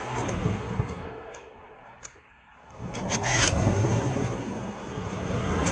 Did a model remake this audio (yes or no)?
yes